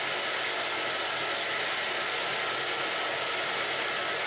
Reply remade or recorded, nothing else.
recorded